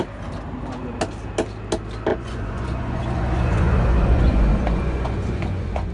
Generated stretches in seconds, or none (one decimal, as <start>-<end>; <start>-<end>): 2.1-5.9